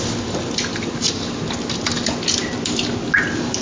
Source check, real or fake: real